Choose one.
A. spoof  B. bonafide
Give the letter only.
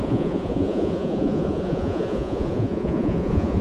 A